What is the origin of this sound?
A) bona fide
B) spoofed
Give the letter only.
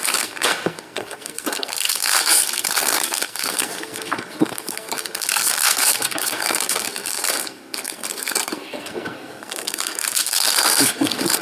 B